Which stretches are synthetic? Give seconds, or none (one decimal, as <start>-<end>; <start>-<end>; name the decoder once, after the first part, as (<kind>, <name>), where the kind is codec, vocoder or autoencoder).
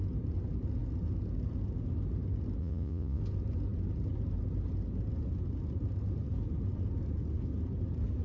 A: 2.6-3.2 (vocoder, Vocos)